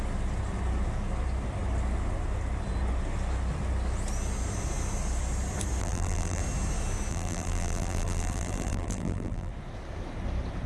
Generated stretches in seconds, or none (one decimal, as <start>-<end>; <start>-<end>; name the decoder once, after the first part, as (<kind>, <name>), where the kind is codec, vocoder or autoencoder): 5.8-6.4 (vocoder, BigVGAN v2); 7.1-9.5